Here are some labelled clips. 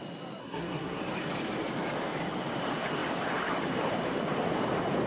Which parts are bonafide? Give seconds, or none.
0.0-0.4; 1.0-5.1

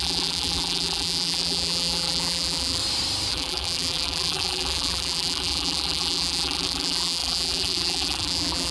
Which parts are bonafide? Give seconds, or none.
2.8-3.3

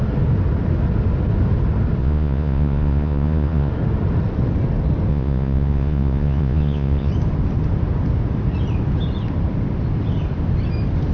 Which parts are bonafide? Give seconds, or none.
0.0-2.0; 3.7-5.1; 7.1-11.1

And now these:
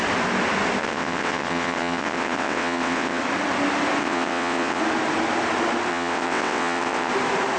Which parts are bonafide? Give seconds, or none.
0.0-0.8; 3.2-4.0; 4.8-5.9; 7.1-7.6